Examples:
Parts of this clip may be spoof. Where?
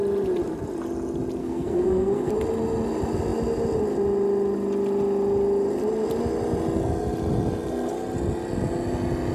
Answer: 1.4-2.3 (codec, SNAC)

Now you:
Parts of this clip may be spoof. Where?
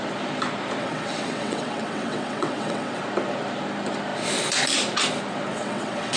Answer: 0.8-3.0 (vocoder, WaveNeXt); 5.5-6.2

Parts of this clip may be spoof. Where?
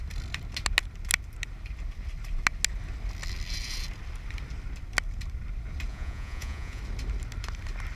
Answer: 5.9-6.8 (vocoder, Vocos)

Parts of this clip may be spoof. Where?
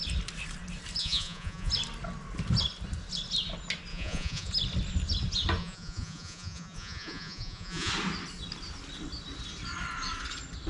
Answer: 1.0-1.7 (vocoder, Vocos); 3.9-4.5; 5.6-7.9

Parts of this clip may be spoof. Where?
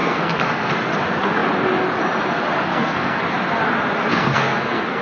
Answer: 0.0-0.7 (codec, SNAC); 2.7-3.2; 4.1-5.0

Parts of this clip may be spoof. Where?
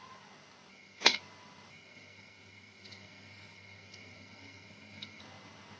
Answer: 0.7-1.2 (codec, SNAC); 1.7-5.2